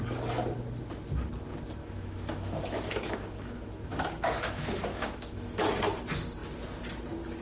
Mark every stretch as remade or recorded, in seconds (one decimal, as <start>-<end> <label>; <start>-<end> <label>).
0.0-1.8 recorded; 1.8-5.8 remade; 5.8-7.4 recorded